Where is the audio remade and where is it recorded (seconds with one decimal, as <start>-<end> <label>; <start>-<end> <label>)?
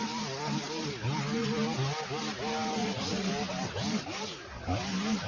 0.0-2.8 recorded; 2.8-3.3 remade; 3.3-5.3 recorded